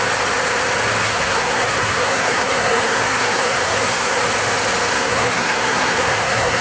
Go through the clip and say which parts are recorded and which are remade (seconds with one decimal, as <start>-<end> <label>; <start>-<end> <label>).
0.0-1.0 recorded; 1.0-4.2 remade; 4.2-4.9 recorded; 4.9-6.6 remade